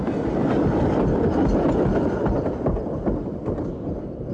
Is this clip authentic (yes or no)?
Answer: yes